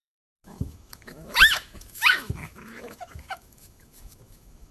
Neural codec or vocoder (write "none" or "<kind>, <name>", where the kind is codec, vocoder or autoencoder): autoencoder, DAC-VAE